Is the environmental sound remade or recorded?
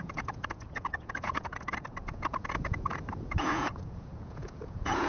remade